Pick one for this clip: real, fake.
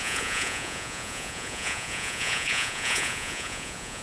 fake